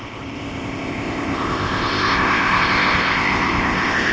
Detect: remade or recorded remade